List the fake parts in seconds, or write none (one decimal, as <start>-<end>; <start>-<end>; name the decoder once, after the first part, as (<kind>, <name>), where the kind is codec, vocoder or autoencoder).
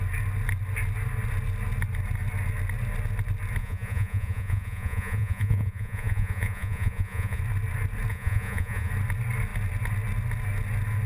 3.6-7.4 (vocoder, Vocos); 8.1-8.9